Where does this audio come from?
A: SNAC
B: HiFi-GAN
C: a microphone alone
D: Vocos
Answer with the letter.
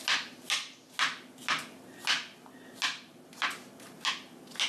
C